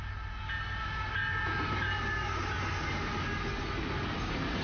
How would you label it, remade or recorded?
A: recorded